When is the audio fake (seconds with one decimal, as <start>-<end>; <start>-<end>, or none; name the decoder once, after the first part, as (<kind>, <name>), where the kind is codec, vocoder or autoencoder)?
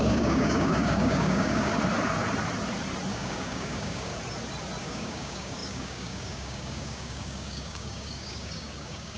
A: 0.0-1.7 (codec, DAC); 3.1-4.1; 4.8-9.2